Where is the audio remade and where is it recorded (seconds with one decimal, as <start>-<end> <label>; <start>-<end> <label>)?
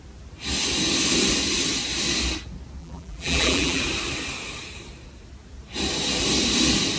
0.0-2.8 recorded; 2.8-3.8 remade; 3.8-7.0 recorded